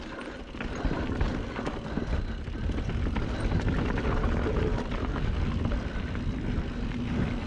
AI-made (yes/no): no